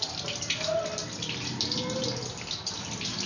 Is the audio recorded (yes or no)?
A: yes